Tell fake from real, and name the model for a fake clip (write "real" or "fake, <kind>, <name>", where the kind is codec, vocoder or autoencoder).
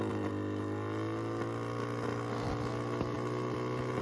real